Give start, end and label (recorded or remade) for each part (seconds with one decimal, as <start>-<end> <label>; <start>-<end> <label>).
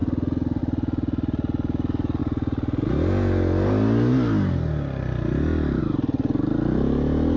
0.0-7.4 recorded